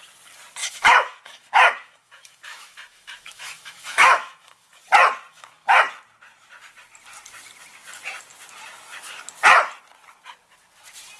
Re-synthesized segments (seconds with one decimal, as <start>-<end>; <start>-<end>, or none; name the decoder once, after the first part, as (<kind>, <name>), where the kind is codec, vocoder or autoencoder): 0.6-4.7 (autoencoder, DAC-VAE); 5.3-5.8